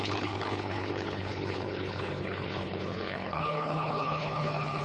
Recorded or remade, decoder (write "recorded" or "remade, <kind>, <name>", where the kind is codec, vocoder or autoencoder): remade, codec, HILCodec